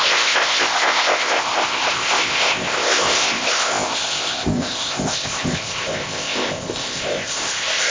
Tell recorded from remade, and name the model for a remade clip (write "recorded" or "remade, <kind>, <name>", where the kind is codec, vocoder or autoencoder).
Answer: remade, codec, ZipCodec